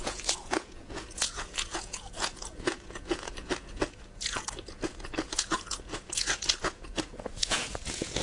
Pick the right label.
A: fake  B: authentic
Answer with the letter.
A